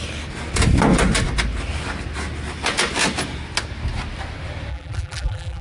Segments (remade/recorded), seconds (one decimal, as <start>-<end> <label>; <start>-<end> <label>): 0.0-4.7 recorded; 4.7-5.6 remade